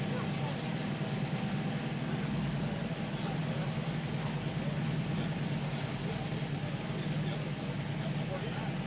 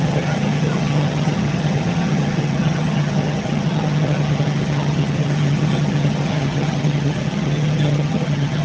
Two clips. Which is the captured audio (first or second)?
first